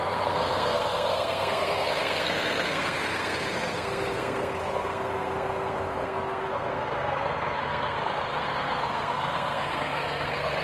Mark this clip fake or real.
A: fake